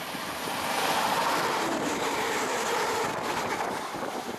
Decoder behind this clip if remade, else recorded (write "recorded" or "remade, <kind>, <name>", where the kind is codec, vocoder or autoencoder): remade, vocoder, BigVGAN v2